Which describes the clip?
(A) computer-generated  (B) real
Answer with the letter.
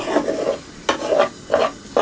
B